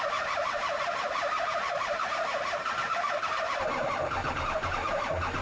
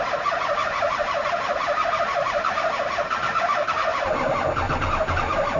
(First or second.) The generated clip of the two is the first